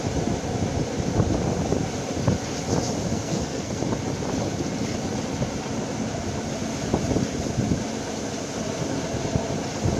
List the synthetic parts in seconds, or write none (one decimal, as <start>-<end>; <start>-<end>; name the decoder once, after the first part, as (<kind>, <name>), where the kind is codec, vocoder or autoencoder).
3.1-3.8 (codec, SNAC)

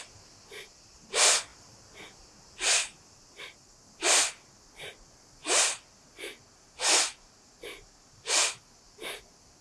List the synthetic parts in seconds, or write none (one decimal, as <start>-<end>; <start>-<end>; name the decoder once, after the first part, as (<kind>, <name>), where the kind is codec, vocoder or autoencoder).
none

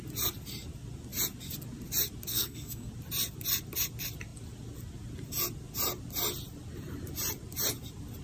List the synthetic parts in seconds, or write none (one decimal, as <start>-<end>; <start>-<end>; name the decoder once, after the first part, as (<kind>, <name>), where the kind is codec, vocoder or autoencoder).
2.3-2.9 (codec, SNAC)